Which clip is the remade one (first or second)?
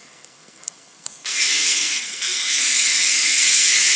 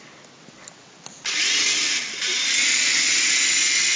first